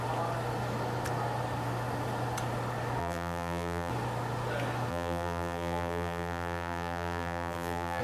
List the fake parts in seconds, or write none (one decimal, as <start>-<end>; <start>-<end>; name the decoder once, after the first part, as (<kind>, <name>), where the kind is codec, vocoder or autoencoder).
3.0-3.9 (vocoder, BigVGAN v2); 4.9-8.0